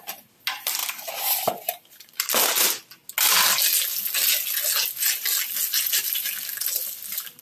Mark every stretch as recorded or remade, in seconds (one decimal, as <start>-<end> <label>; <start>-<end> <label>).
0.0-0.8 recorded; 0.8-2.3 remade; 2.3-7.4 recorded